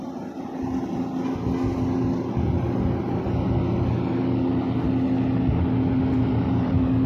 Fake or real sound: real